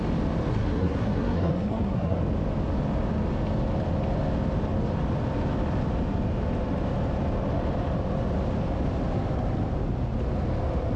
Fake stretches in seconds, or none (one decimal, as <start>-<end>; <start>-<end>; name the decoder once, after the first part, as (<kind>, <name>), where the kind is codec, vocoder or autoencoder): 0.5-2.2 (codec, SNAC)